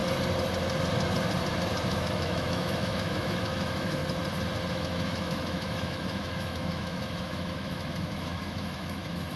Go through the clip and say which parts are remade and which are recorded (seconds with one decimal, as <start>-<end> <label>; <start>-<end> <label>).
0.0-1.9 recorded; 1.9-4.0 remade; 4.0-4.7 recorded; 4.7-9.4 remade